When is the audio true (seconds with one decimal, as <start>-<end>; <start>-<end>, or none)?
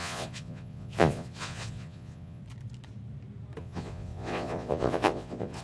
2.4-3.6